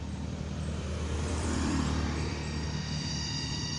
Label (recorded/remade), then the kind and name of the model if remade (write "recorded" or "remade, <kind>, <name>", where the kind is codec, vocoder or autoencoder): remade, vocoder, BigVGAN v2